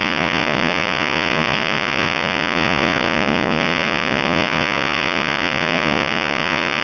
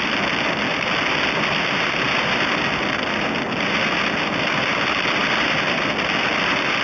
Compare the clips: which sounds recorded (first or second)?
second